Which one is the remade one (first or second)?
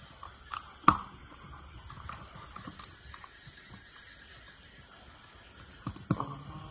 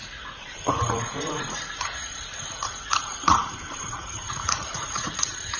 second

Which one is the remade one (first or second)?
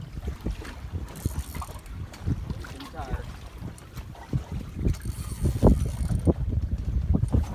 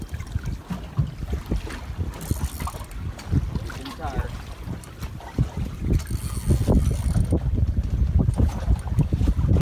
first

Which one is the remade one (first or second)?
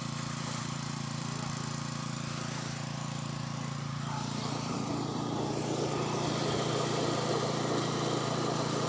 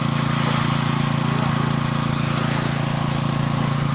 first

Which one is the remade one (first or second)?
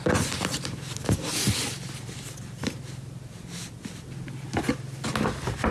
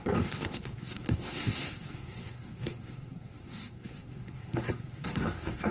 second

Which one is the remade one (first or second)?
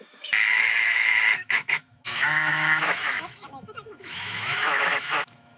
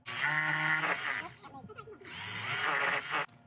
first